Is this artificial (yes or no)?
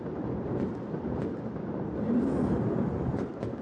no